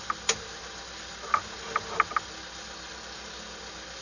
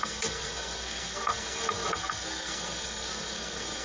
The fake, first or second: second